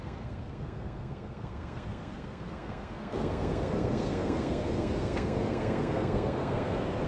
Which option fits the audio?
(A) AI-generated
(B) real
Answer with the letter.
A